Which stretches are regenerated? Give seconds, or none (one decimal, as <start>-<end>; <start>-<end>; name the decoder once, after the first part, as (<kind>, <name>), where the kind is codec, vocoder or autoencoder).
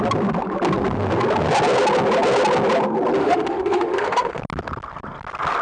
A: 3.2-4.4 (autoencoder, DAC-VAE)